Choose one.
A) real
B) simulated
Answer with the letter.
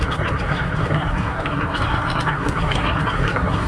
B